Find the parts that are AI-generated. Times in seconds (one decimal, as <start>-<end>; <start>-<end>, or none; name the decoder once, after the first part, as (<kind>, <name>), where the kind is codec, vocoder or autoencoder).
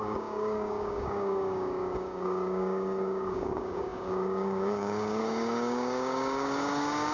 0.0-7.1 (codec, DAC)